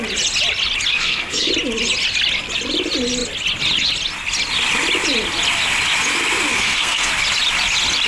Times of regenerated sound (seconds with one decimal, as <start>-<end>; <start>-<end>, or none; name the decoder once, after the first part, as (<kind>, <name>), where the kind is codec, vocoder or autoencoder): 0.9-1.5 (codec, SNAC); 6.5-7.1

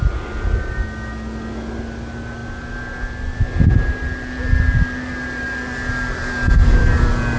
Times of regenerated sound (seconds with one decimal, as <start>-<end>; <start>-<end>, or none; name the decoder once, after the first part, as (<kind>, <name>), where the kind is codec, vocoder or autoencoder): none